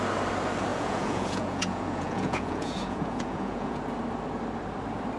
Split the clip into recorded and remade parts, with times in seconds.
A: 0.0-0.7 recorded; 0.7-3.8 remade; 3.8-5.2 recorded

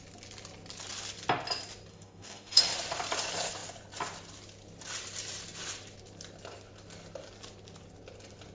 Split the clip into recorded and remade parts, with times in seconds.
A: 0.0-1.9 recorded; 1.9-2.6 remade; 2.6-8.5 recorded